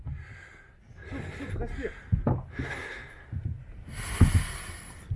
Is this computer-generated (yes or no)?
no